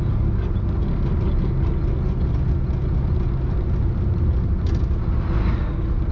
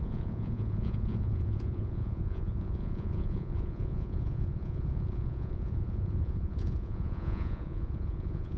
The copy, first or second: second